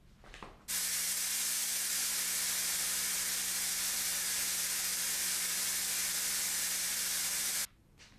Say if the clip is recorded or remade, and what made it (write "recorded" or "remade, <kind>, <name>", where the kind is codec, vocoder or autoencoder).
recorded